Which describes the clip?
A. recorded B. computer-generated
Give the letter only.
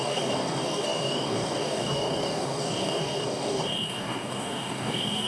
B